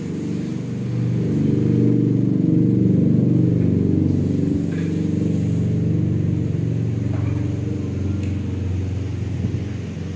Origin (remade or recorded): recorded